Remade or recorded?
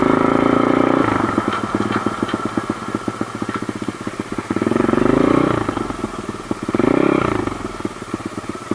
recorded